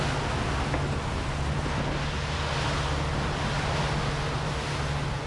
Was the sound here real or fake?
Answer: real